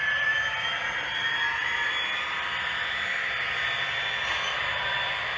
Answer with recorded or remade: recorded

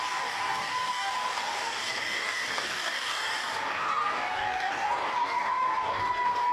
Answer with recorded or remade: remade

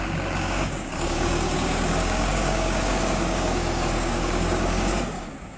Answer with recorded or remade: remade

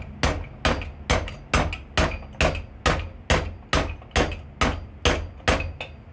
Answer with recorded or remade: recorded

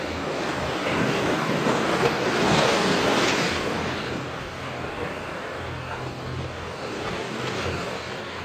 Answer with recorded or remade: remade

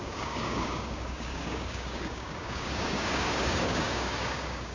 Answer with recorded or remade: remade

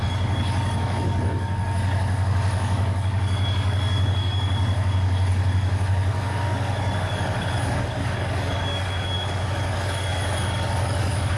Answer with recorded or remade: remade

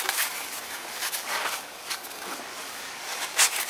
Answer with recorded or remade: remade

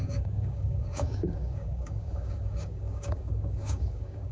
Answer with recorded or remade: remade